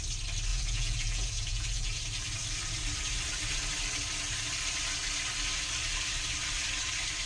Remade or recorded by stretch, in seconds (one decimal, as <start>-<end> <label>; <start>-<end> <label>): 0.0-0.5 recorded; 0.5-2.0 remade; 2.0-7.3 recorded